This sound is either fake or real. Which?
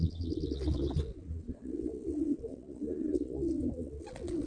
fake